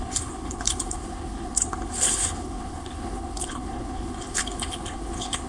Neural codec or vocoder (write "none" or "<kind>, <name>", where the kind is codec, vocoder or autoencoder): codec, HILCodec